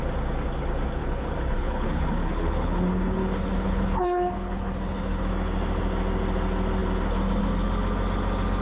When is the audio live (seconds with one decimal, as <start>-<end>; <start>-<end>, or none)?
0.0-1.0; 5.3-8.6